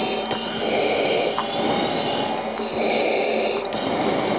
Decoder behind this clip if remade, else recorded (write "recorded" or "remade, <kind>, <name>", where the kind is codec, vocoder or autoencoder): recorded